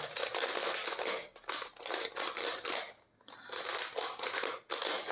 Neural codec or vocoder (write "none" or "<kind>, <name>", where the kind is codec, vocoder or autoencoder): none